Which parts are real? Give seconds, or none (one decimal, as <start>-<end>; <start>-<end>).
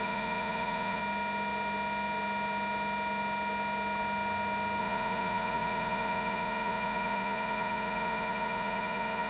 1.0-4.8